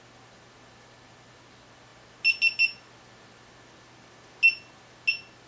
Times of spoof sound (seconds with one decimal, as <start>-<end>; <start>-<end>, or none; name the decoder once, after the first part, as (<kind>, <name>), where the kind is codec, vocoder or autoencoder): none